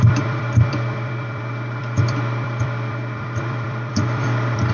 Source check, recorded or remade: remade